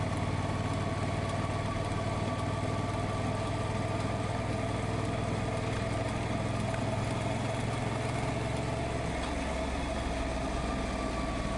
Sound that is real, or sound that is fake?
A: real